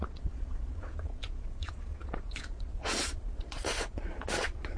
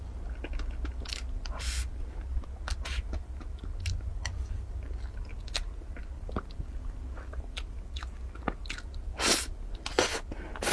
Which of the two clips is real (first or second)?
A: second